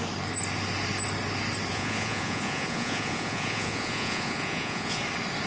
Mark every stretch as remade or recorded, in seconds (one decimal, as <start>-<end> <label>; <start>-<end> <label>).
0.0-1.7 recorded; 1.7-5.0 remade; 5.0-5.5 recorded

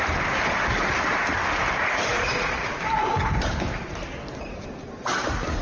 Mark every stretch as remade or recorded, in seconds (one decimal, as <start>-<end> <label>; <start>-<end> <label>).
0.0-2.1 recorded; 2.1-5.6 remade